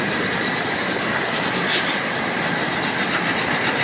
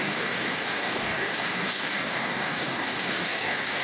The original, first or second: first